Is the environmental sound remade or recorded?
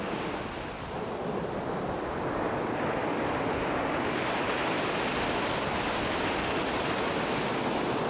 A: recorded